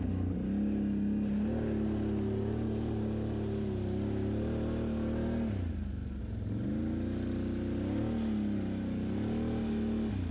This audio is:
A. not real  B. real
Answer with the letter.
B